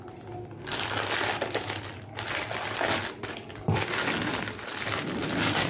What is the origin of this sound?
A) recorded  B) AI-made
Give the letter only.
A